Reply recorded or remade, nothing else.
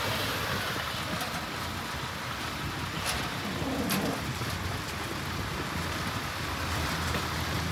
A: recorded